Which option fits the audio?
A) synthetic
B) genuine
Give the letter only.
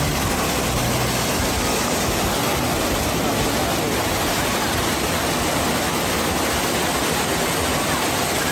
B